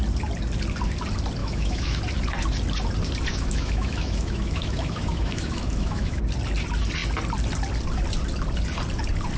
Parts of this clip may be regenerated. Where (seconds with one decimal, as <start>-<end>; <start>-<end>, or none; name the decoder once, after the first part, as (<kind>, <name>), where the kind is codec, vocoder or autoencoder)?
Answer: 1.4-2.0 (autoencoder, DAC-VAE); 3.3-6.2